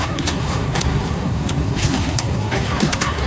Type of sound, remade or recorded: remade